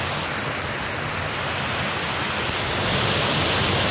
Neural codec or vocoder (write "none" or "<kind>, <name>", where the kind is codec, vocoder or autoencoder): none